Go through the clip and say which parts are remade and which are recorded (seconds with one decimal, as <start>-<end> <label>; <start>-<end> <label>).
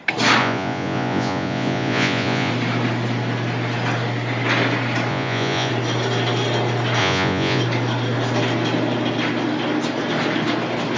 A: 0.0-0.4 recorded; 0.4-2.5 remade; 2.5-5.1 recorded; 5.1-5.7 remade; 5.7-7.0 recorded; 7.0-7.6 remade; 7.6-11.0 recorded